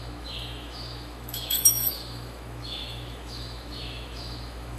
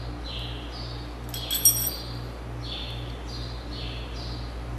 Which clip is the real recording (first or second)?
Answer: second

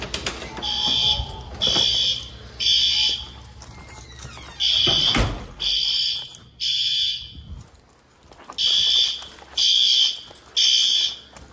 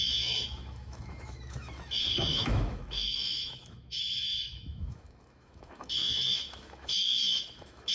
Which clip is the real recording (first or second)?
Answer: first